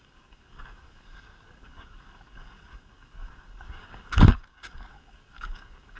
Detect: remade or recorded remade